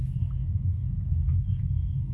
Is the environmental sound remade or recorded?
remade